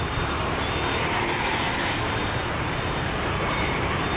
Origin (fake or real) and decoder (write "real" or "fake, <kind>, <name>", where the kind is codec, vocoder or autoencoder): real